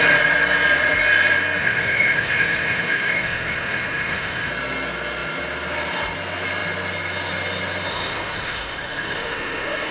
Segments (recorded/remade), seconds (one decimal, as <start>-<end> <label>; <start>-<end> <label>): 0.0-1.6 recorded; 1.6-4.5 remade; 4.5-7.9 recorded; 7.9-9.9 remade